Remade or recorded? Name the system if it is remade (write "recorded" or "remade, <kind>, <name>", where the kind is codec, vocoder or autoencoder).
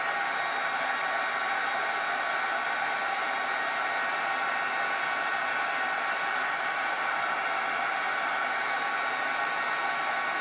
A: recorded